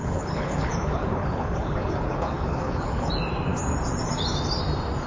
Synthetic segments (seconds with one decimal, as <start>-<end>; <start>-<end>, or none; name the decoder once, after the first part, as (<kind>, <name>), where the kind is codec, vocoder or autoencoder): 0.0-3.1 (codec, HILCodec)